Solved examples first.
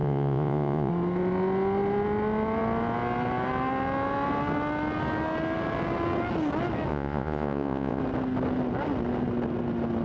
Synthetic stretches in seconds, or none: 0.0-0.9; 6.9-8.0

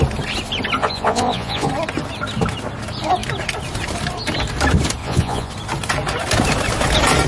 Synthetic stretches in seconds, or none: 0.8-1.7; 5.0-5.5

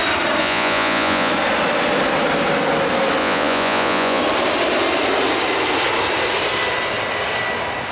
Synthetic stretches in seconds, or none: 0.4-1.3; 3.2-4.2

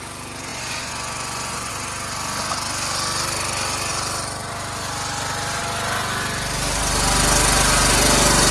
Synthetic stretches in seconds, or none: 0.5-1.7

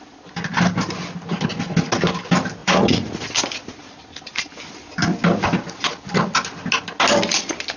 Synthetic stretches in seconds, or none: 2.6-3.2

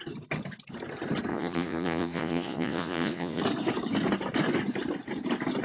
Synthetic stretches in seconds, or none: 1.3-3.4

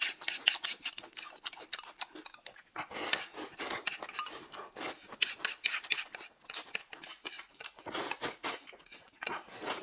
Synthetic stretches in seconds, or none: 7.1-9.8